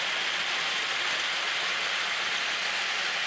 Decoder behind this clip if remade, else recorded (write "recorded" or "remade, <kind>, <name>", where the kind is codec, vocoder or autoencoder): recorded